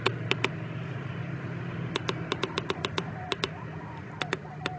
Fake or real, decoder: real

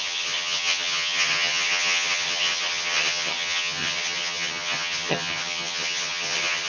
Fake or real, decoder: fake, vocoder, HiFi-GAN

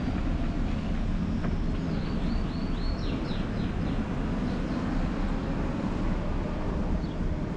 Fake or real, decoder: real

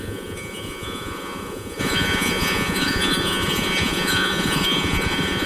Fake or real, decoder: fake, vocoder, Vocos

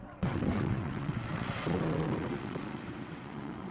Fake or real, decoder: fake, vocoder, WaveNeXt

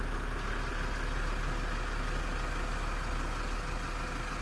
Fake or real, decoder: real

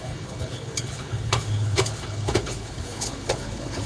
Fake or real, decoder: fake, codec, HILCodec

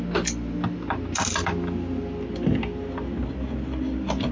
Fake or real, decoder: real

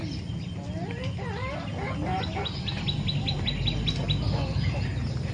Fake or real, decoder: real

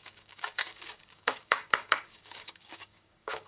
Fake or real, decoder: fake, codec, DAC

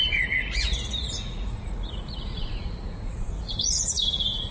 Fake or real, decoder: fake, vocoder, Vocos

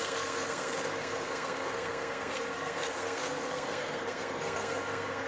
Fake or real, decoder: fake, codec, SNAC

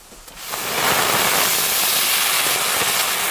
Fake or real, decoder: real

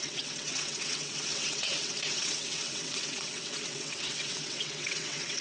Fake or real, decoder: fake, vocoder, WaveNeXt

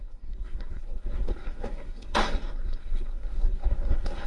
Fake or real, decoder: fake, codec, SNAC